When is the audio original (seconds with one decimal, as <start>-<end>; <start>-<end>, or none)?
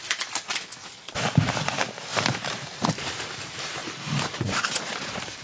0.5-1.3; 3.8-4.4